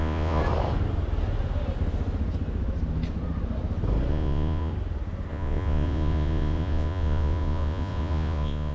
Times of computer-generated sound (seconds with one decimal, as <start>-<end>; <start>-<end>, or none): 0.0-0.4; 4.1-4.7; 5.3-8.7